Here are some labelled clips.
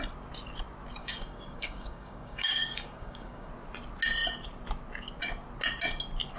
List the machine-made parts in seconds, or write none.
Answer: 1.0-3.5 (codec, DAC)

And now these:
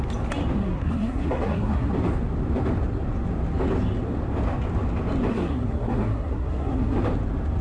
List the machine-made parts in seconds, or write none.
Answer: 0.6-1.9 (codec, SNAC); 5.3-7.0